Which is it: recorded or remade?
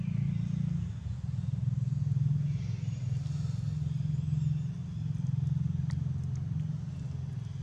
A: recorded